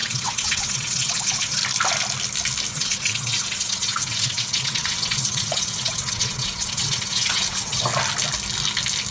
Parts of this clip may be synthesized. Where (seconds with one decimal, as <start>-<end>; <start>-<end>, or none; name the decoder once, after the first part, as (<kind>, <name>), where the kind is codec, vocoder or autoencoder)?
0.0-1.6 (vocoder, WaveNeXt); 2.7-7.9